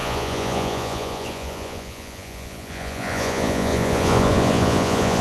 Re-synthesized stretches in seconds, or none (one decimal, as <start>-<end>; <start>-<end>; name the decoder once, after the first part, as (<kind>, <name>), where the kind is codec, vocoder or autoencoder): 0.0-5.2 (vocoder, Vocos)